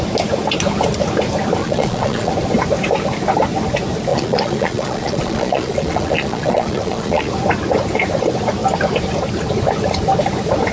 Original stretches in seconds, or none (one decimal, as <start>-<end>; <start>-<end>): 0.0-1.6; 2.3-4.1; 7.3-10.7